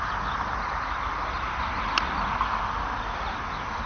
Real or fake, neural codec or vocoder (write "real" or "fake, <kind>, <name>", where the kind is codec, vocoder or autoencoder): real